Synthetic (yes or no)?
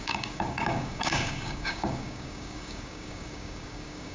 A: yes